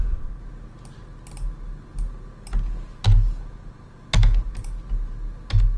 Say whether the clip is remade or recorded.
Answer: recorded